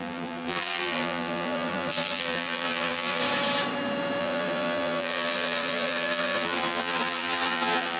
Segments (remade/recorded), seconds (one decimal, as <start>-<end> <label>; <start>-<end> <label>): 0.0-3.2 remade; 3.2-4.2 recorded; 4.2-8.0 remade